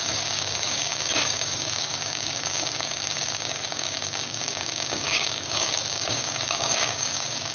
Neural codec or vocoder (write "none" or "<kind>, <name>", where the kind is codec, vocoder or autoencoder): codec, DAC